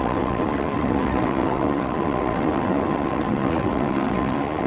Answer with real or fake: fake